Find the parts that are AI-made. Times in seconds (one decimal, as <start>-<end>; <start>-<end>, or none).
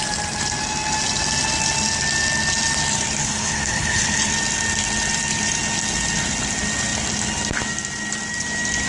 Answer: 3.2-4.3